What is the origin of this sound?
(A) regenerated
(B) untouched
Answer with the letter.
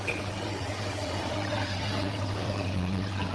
A